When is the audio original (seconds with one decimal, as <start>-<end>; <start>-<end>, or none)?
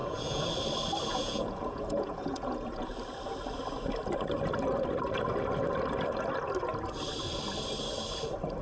0.5-1.1; 2.9-8.6